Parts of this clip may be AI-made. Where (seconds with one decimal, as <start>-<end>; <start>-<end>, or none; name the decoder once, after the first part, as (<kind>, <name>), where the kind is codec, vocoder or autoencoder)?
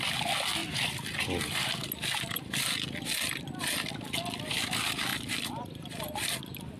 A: 5.1-6.1 (vocoder, BigVGAN v2)